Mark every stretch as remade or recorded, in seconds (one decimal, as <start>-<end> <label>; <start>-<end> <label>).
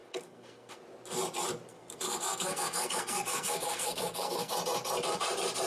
0.0-0.8 remade; 0.8-1.7 recorded; 1.7-4.5 remade; 4.5-5.7 recorded